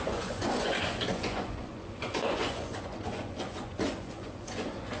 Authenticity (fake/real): fake